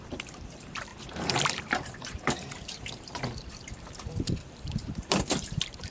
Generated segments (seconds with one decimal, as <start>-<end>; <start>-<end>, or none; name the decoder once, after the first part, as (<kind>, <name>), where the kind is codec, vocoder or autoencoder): 0.0-5.9 (vocoder, BigVGAN v2)